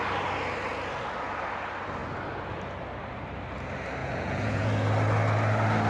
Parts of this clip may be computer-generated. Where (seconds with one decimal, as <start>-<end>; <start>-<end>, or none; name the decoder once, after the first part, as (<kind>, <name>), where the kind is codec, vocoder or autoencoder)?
4.0-4.7 (vocoder, Vocos)